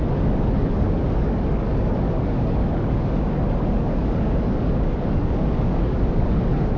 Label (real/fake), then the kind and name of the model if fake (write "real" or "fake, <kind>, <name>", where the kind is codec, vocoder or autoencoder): fake, codec, DAC